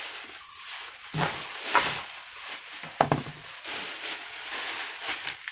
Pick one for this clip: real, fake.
real